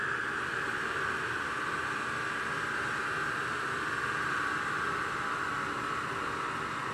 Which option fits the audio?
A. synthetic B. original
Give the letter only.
B